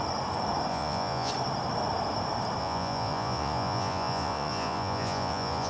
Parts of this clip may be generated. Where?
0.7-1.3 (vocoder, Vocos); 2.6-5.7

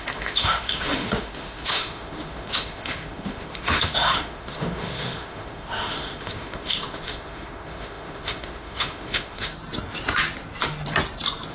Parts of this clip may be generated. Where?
0.0-9.5 (autoencoder, DAC-VAE)

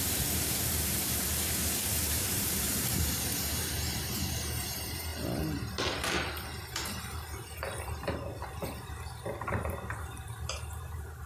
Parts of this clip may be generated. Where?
0.0-5.1 (vocoder, BigVGAN v2); 9.5-11.3

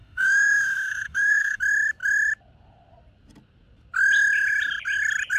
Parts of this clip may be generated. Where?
0.0-1.6 (autoencoder, DAC-VAE)

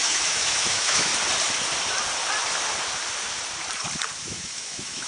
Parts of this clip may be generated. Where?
0.0-1.1 (autoencoder, DAC-VAE); 4.2-5.1

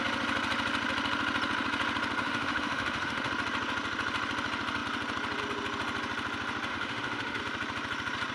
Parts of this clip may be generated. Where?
2.2-3.3 (autoencoder, DAC-VAE); 6.7-7.4

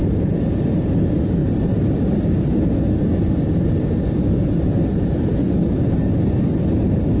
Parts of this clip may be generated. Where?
0.0-0.9 (vocoder, BigVGAN v2); 1.4-2.9

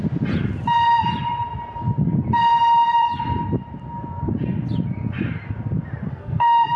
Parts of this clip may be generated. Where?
6.1-6.8 (codec, SNAC)